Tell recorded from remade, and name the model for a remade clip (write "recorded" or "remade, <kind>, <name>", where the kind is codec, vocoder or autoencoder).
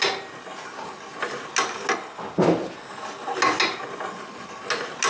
recorded